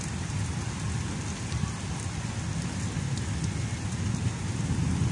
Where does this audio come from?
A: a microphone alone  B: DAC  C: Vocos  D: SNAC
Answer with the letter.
A